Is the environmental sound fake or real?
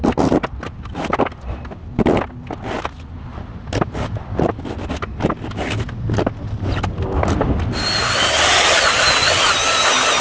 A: real